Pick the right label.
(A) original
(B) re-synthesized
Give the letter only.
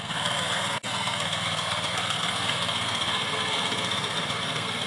B